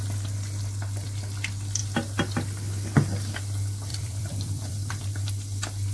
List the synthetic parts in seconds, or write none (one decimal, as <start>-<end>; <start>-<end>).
3.9-5.3